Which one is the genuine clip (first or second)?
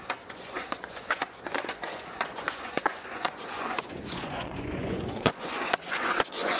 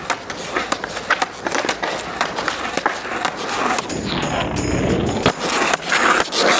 second